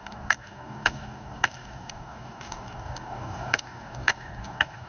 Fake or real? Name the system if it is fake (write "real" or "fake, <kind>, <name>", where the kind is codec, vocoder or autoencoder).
fake, codec, DAC